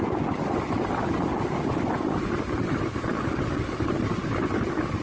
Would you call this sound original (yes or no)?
yes